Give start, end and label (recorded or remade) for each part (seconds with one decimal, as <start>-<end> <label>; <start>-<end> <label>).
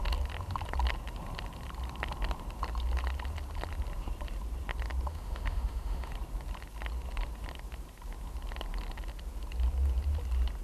0.0-5.1 recorded; 5.1-6.1 remade; 6.1-10.6 recorded